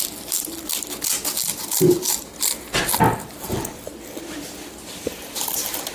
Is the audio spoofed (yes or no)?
no